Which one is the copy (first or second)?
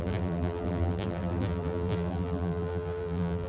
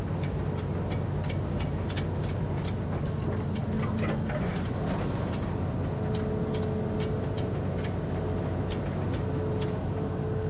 first